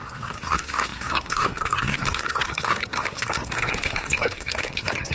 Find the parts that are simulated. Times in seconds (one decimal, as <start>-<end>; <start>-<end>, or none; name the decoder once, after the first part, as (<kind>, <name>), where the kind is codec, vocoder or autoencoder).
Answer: 0.0-5.1 (codec, SNAC)